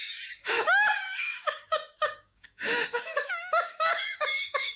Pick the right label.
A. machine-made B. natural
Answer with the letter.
A